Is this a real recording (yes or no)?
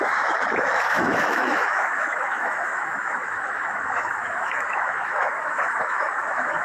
no